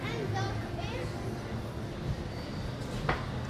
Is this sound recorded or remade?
recorded